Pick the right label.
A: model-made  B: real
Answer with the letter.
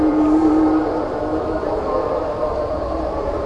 A